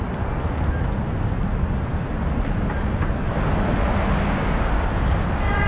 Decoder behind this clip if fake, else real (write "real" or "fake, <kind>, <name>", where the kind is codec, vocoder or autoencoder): real